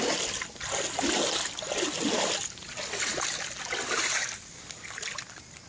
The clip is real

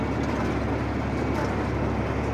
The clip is real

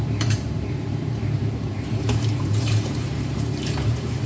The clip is fake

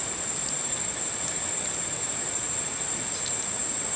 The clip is fake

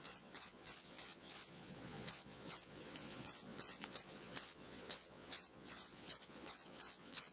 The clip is fake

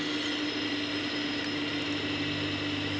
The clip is real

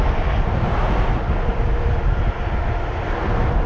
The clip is real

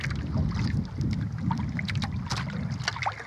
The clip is real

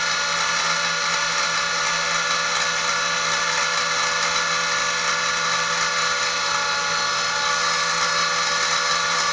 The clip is real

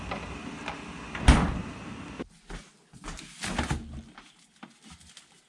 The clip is real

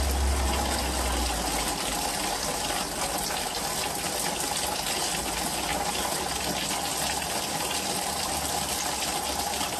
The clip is real